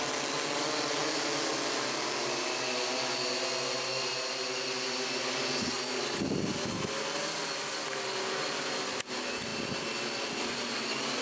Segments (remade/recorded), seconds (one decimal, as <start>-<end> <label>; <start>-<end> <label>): 0.0-11.2 recorded